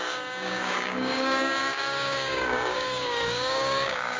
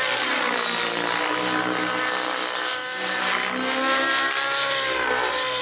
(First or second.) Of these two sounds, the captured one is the second